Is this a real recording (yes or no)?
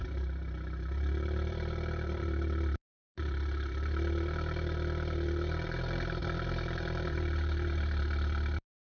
no